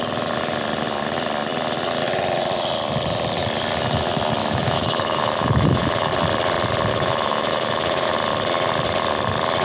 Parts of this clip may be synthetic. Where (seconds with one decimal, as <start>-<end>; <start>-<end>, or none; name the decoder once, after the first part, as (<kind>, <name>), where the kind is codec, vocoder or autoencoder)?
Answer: 4.4-6.1 (autoencoder, DAC-VAE); 6.9-8.1